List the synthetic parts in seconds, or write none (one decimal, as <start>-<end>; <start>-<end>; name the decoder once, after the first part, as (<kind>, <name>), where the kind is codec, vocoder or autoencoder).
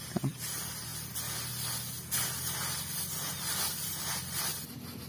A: 0.0-0.9 (vocoder, BigVGAN v2); 2.8-5.1